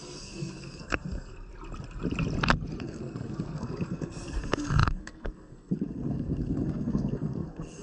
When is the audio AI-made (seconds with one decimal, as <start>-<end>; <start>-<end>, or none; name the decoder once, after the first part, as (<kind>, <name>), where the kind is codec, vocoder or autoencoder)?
0.0-1.5 (codec, SNAC); 2.8-7.8